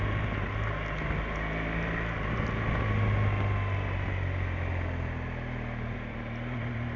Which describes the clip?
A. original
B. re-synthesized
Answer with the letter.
A